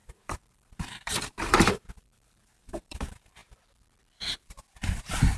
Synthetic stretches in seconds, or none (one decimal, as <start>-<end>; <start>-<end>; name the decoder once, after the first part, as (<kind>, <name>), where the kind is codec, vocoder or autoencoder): 0.0-3.4 (vocoder, BigVGAN v2); 5.0-5.4